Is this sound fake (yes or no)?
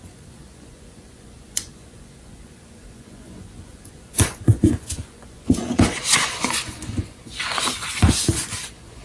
yes